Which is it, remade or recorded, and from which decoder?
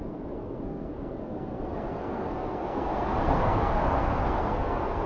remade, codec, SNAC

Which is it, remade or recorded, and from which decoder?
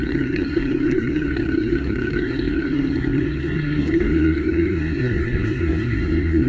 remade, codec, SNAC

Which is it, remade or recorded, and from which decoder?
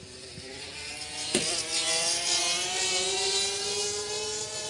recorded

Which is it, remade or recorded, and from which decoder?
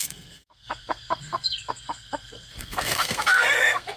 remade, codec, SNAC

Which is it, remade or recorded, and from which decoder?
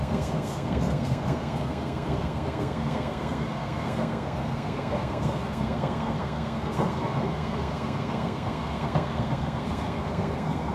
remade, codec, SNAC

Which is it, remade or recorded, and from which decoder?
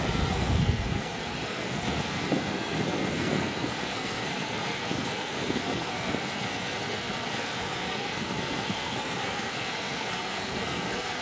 remade, codec, SNAC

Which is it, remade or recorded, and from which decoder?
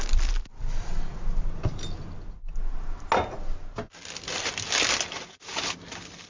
recorded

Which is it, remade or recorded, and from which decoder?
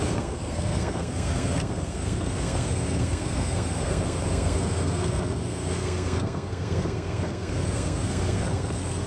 remade, codec, SNAC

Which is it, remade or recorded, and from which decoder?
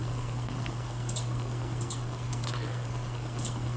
remade, codec, SNAC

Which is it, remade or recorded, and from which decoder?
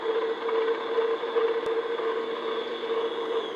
recorded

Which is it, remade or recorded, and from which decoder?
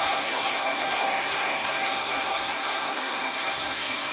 remade, codec, SNAC